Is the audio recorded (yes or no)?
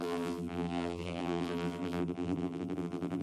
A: no